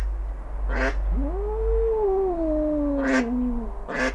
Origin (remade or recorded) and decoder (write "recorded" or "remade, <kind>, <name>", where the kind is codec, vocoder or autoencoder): recorded